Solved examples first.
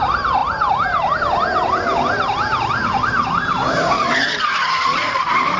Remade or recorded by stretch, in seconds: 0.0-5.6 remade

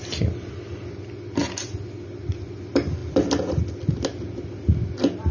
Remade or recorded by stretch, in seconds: 0.0-5.3 recorded

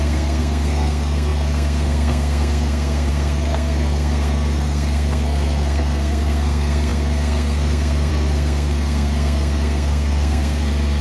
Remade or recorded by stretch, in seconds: 0.0-11.0 remade

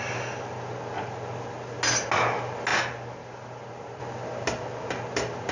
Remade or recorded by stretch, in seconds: 0.0-5.5 recorded

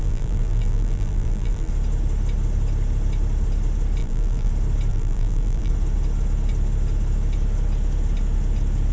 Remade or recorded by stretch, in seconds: 0.0-1.7 remade; 1.7-4.0 recorded; 4.0-4.5 remade; 4.5-4.9 recorded; 4.9-5.7 remade; 5.7-8.9 recorded

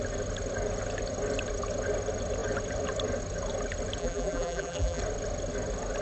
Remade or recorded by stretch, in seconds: 0.0-4.0 recorded; 4.0-5.0 remade; 5.0-6.0 recorded

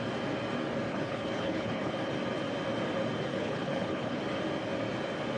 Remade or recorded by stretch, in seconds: 0.0-0.9 recorded; 0.9-2.1 remade; 2.1-3.3 recorded; 3.3-4.2 remade; 4.2-5.4 recorded

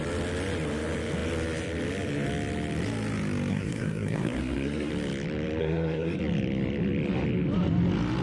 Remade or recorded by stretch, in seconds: 0.0-3.5 recorded; 3.5-4.9 remade; 4.9-5.6 recorded; 5.6-6.2 remade; 6.2-8.2 recorded